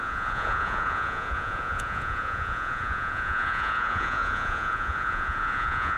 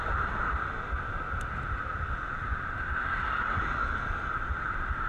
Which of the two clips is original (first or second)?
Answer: second